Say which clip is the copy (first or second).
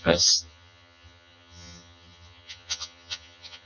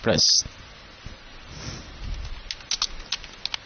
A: first